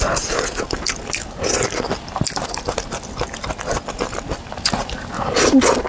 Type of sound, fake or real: real